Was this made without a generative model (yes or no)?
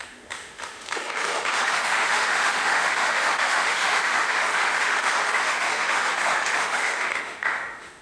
no